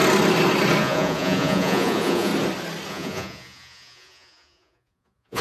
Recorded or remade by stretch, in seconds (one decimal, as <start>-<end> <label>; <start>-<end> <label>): 0.0-0.8 recorded; 0.8-2.3 remade; 2.3-2.9 recorded; 2.9-5.4 remade